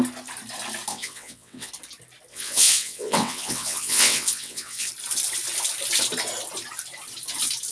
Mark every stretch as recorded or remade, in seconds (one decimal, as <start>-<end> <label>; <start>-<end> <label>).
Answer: 0.0-0.9 recorded; 0.9-1.7 remade; 1.7-2.3 recorded; 2.3-4.9 remade; 4.9-7.7 recorded